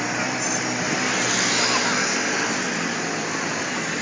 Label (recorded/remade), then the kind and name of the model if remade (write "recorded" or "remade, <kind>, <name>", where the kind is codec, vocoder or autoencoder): recorded